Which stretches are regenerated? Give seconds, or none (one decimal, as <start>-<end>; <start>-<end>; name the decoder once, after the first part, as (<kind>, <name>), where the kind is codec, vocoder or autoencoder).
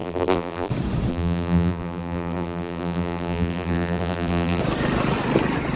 0.0-0.7 (vocoder, BigVGAN v2); 1.1-4.6